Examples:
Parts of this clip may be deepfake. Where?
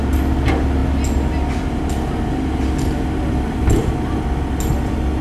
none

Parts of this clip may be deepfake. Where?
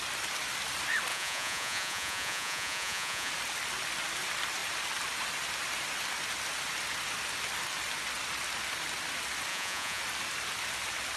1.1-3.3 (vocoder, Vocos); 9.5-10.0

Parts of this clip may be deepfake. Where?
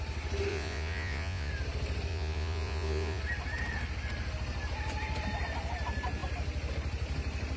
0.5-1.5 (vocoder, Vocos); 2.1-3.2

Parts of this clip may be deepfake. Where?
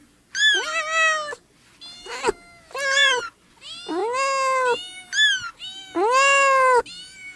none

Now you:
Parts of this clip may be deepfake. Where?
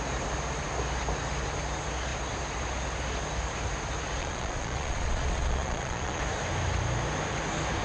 4.2-6.2 (vocoder, Vocos)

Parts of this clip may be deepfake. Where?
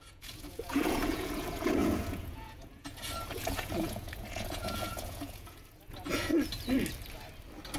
0.0-6.3 (vocoder, Vocos)